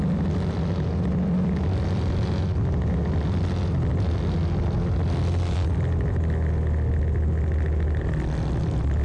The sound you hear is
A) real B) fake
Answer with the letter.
A